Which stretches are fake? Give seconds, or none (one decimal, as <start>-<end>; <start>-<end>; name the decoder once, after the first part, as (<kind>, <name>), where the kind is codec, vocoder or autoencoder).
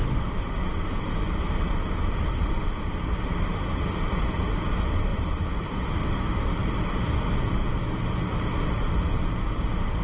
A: 5.1-7.7 (vocoder, BigVGAN v2)